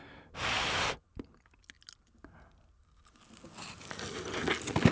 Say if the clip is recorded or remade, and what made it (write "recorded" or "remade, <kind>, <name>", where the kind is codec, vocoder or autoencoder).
recorded